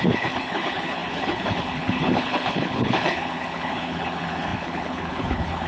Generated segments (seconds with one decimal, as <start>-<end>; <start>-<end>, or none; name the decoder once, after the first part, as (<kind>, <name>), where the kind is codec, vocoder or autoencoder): 0.0-5.7 (codec, HILCodec)